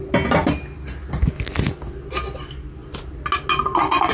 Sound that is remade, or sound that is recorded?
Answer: recorded